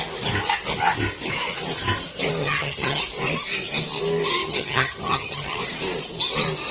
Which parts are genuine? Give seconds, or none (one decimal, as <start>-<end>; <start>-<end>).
0.0-2.4; 3.0-4.4; 5.6-6.7